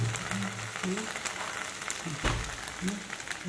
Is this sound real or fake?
real